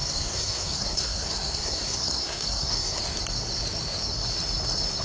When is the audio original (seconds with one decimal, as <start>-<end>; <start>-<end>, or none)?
3.0-5.0